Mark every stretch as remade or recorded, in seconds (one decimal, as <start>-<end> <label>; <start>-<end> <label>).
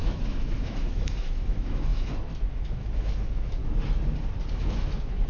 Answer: 0.0-3.6 remade; 3.6-4.5 recorded; 4.5-5.3 remade